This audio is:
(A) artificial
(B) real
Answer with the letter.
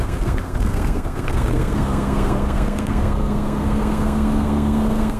A